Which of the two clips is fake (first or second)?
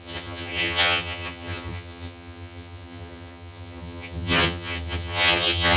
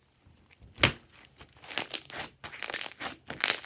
first